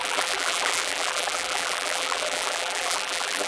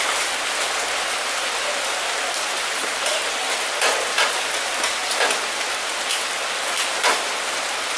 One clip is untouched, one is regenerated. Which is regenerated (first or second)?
first